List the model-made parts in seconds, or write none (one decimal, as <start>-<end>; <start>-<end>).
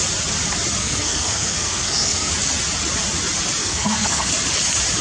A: 0.8-2.3; 3.6-4.3